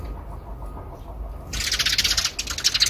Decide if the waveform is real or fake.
real